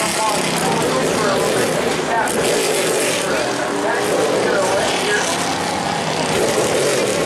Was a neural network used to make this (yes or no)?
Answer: no